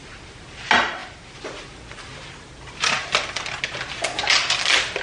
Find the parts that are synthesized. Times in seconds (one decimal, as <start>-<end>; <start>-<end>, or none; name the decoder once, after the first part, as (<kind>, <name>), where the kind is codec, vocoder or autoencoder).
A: none